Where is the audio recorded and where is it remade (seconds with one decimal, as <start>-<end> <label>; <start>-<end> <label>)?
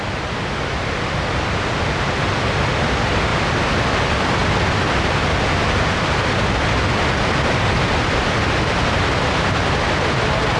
0.0-10.6 recorded